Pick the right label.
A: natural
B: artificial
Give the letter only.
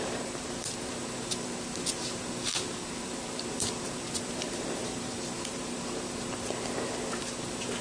B